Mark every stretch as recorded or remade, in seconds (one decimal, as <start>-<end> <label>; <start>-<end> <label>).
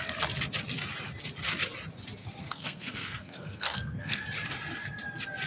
0.0-2.2 recorded; 2.2-4.2 remade; 4.2-5.5 recorded